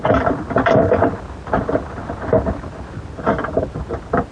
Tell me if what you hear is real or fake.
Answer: real